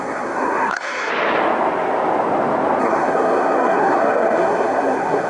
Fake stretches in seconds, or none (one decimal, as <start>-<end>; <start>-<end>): 0.0-1.1; 2.8-5.3